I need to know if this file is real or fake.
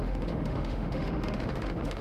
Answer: fake